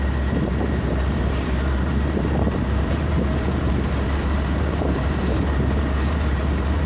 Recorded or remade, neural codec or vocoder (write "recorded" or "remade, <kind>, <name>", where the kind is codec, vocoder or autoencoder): remade, vocoder, BigVGAN v2